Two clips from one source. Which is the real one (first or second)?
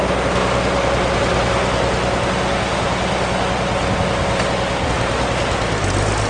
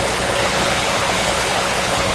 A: first